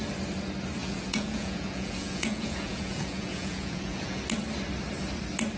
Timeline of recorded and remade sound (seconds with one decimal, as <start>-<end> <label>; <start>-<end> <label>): 0.0-0.8 recorded; 0.8-4.2 remade; 4.2-5.6 recorded